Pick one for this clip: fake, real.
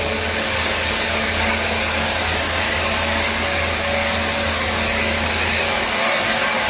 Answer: fake